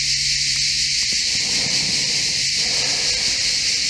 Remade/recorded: recorded